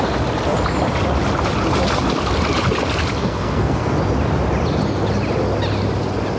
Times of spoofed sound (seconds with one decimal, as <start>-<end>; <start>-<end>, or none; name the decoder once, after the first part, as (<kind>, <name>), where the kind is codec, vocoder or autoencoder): 3.2-3.9 (codec, SNAC)